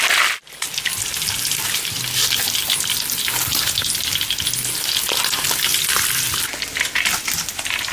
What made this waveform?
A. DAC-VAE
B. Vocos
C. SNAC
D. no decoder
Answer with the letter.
D